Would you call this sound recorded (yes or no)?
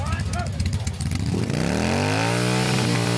yes